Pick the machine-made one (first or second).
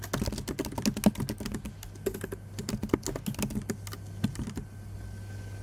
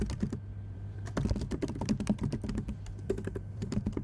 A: second